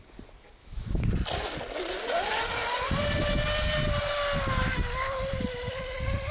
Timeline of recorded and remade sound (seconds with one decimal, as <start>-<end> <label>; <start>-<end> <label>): 0.0-0.6 recorded; 0.6-1.1 remade; 1.1-6.3 recorded